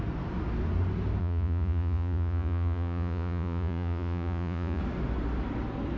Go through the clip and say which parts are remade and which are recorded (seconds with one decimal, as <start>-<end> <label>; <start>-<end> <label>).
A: 0.0-1.2 recorded; 1.2-4.8 remade; 4.8-6.0 recorded